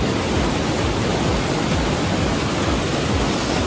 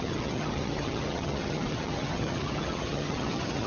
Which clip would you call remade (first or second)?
second